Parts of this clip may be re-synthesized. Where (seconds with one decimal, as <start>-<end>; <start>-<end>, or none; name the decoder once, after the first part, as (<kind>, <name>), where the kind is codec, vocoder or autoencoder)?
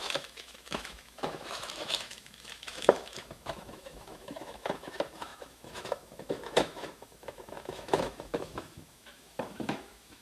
0.0-10.2 (autoencoder, DAC-VAE)